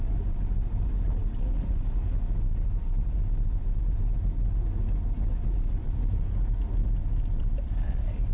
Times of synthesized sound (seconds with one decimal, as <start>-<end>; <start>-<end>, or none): 5.8-6.3

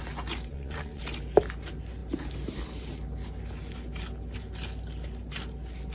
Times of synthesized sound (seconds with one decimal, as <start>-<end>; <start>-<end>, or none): 0.5-1.0

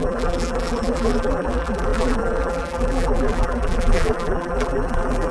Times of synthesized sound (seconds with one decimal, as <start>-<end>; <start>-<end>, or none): 0.0-5.3

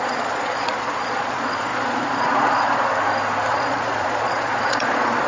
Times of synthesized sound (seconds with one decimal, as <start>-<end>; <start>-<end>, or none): 0.0-2.9; 3.5-5.3

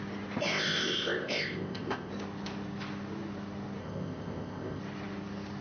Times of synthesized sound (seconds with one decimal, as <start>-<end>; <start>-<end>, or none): 0.5-2.1; 3.8-4.8

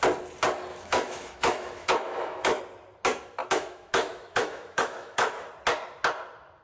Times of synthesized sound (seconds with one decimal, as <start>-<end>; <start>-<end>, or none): 0.7-2.6; 3.4-5.5

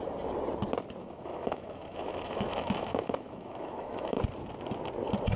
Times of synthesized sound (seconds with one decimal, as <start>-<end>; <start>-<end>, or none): 1.0-4.2